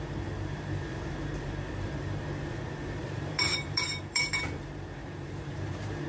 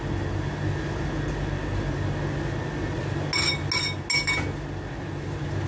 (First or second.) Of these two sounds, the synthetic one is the first